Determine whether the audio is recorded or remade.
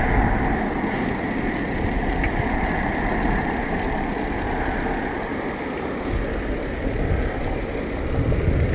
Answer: recorded